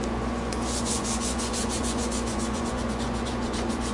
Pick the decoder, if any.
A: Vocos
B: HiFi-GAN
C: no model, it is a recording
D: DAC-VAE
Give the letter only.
A